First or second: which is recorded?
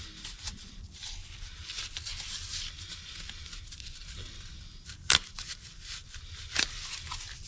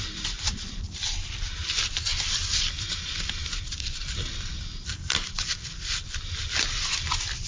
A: first